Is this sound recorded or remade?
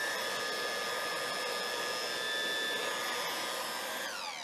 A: recorded